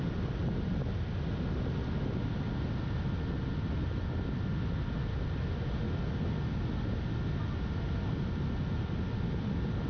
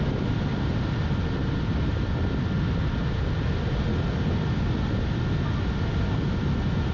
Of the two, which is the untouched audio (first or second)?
first